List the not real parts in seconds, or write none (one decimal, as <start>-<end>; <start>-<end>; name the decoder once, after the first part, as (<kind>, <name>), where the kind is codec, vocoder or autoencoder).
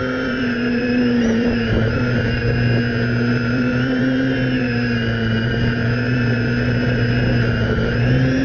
0.0-2.4 (vocoder, BigVGAN v2); 3.3-8.4